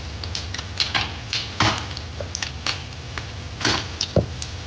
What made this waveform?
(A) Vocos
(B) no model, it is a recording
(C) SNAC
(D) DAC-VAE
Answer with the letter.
B